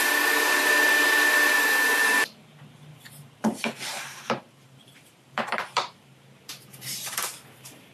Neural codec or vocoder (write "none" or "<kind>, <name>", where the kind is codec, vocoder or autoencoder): vocoder, BigVGAN v2